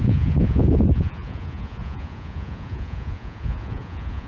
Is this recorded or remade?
remade